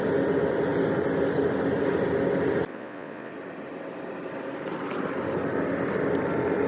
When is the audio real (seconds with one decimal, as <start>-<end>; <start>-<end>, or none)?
0.0-2.7; 3.3-6.7